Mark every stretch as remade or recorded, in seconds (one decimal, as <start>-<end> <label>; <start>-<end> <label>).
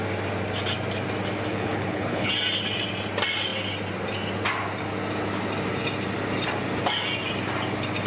0.0-1.5 recorded; 1.5-2.3 remade; 2.3-8.1 recorded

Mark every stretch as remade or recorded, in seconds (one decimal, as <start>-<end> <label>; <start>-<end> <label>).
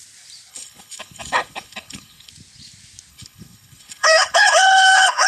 0.0-0.5 recorded; 0.5-2.3 remade; 2.3-3.1 recorded; 3.1-5.3 remade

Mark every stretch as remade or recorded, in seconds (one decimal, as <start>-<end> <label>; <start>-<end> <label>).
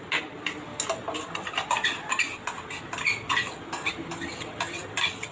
0.0-5.3 recorded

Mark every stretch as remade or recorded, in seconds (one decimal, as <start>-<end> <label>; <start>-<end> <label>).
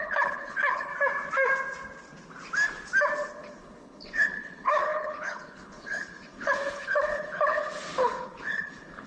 0.0-0.9 remade; 0.9-3.3 recorded; 3.3-9.1 remade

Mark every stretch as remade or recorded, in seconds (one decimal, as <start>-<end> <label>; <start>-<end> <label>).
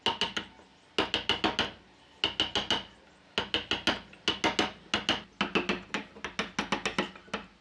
0.0-7.6 recorded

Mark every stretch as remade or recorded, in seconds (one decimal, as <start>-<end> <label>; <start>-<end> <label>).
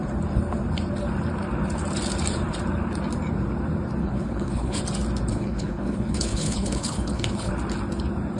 0.0-4.0 recorded; 4.0-4.8 remade; 4.8-5.3 recorded; 5.3-7.5 remade; 7.5-8.4 recorded